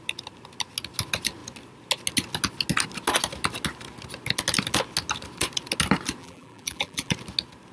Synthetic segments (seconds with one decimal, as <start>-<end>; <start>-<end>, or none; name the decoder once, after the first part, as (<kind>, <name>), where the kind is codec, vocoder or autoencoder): 6.2-7.1 (vocoder, BigVGAN v2)